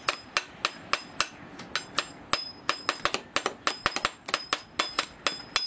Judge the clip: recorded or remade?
recorded